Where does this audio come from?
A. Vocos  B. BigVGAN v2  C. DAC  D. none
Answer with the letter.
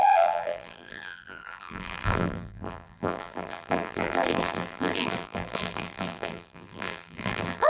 B